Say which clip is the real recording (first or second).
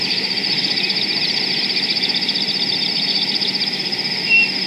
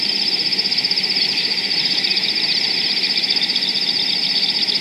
first